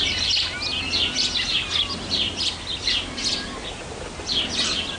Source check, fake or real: real